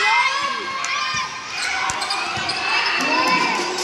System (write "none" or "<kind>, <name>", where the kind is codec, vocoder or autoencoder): none